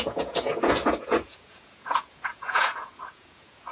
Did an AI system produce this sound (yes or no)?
yes